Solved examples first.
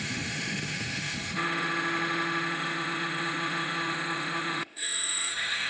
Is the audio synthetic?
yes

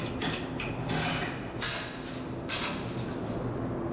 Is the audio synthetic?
no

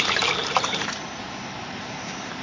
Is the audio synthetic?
yes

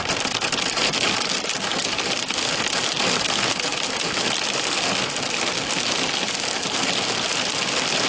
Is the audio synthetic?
no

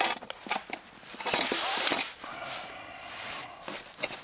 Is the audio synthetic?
no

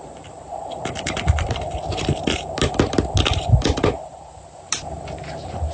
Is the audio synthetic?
yes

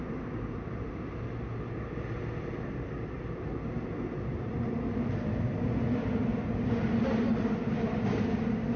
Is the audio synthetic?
no